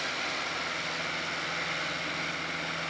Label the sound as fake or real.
real